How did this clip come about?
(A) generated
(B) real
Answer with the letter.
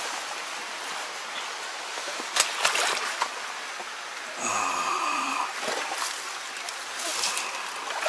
B